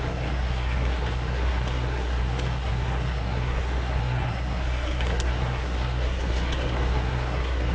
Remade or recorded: remade